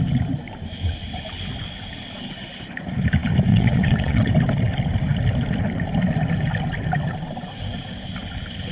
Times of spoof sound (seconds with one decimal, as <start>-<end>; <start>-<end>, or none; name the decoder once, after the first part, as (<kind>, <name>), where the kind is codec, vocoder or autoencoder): 3.5-4.3 (vocoder, WaveNeXt)